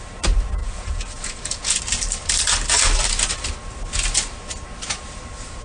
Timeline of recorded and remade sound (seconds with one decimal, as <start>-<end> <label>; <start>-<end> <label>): 0.0-0.6 recorded; 0.6-1.8 remade; 1.8-5.6 recorded